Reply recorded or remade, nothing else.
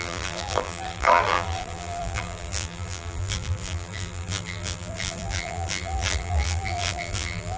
remade